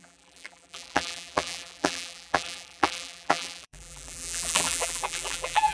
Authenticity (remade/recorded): remade